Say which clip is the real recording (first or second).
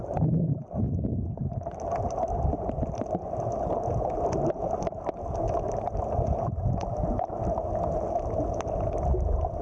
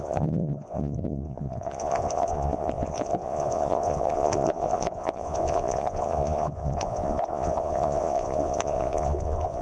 first